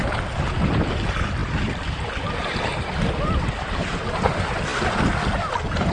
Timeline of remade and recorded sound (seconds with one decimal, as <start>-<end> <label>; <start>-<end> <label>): 0.0-5.9 recorded